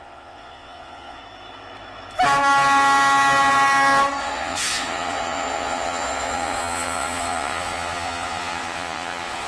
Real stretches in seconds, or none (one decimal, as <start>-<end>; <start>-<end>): 1.2-4.2